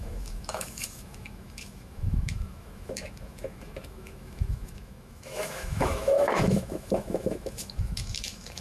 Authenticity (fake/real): fake